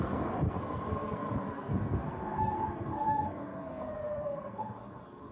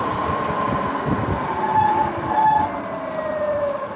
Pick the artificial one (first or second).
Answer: first